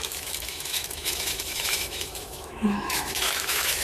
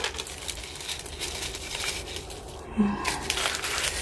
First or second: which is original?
second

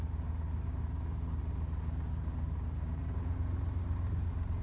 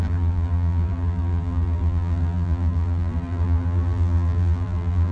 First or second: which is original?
first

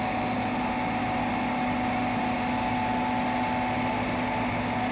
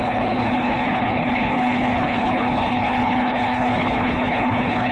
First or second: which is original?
first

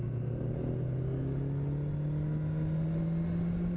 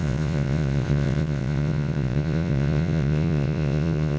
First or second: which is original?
first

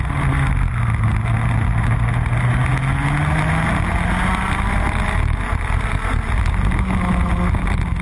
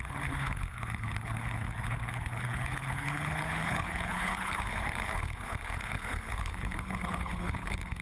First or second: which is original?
first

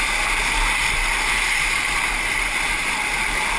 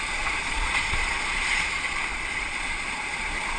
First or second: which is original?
first